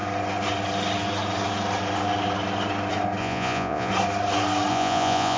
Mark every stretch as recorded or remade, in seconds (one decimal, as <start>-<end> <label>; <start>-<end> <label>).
0.0-3.2 recorded; 3.2-3.9 remade; 3.9-4.7 recorded; 4.7-5.4 remade